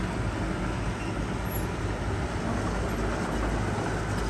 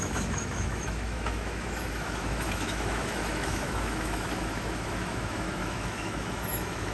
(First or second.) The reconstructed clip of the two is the second